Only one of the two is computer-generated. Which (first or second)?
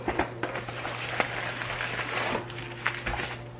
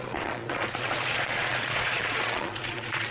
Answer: second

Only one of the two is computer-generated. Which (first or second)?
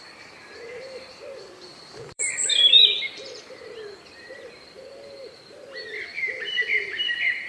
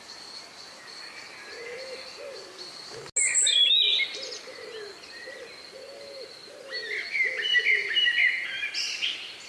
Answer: first